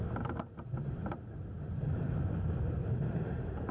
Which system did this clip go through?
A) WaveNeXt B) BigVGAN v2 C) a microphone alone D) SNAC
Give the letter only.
C